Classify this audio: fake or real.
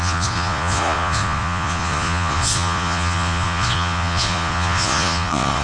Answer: fake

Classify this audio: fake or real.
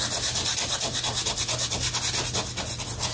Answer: real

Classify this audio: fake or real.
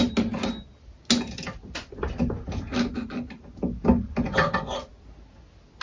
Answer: real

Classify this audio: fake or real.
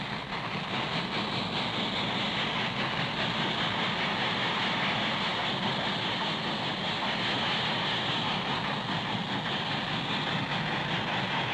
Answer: real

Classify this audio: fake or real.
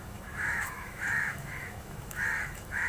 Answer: fake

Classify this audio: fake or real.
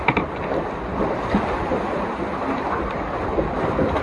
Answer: fake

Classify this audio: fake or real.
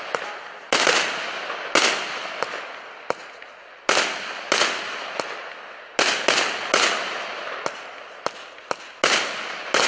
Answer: real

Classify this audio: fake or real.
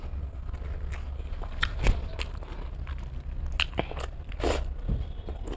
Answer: real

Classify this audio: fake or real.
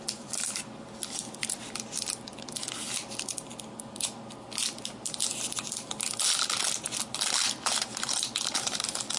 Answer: real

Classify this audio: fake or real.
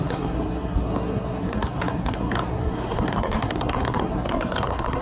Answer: fake